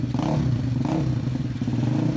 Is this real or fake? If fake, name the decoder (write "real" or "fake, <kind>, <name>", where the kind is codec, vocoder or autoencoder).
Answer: real